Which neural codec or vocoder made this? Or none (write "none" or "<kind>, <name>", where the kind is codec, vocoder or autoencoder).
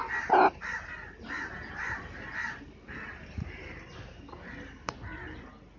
none